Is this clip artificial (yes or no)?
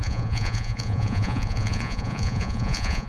yes